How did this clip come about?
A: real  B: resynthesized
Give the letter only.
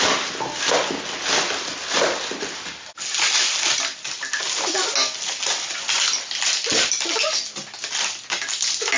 A